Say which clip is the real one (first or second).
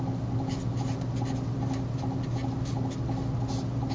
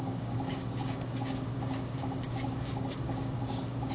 first